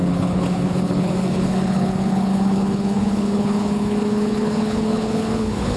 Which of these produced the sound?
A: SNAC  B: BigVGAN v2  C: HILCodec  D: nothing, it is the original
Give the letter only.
C